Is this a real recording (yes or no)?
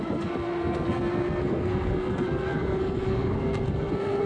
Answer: no